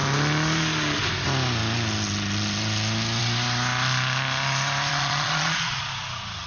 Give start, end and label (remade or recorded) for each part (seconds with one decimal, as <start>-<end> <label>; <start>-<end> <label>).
0.0-4.9 recorded; 4.9-5.8 remade; 5.8-6.5 recorded